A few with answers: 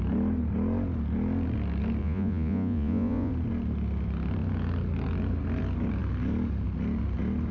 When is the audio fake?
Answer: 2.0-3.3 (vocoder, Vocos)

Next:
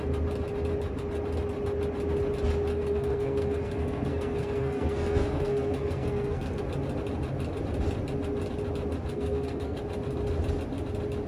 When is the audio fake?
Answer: 2.7-6.6 (codec, SNAC); 9.1-9.8